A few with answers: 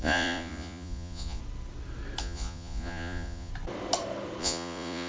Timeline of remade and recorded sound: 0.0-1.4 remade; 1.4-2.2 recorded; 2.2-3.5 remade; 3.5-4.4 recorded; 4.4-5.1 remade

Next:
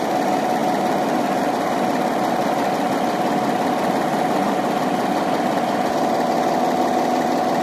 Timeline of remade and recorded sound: 0.0-7.6 recorded

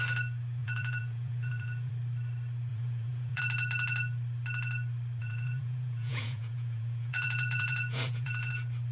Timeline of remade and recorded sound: 0.0-0.6 recorded; 0.6-1.9 remade; 1.9-2.7 recorded; 2.7-3.4 remade; 3.4-5.2 recorded; 5.2-8.5 remade; 8.5-8.9 recorded

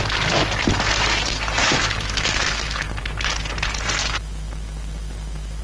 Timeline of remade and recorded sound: 0.0-1.6 recorded; 1.6-3.0 remade; 3.0-4.0 recorded; 4.0-5.6 remade